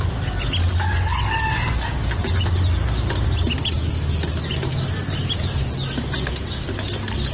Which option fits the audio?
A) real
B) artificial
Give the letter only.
A